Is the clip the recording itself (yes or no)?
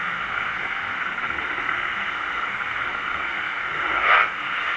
no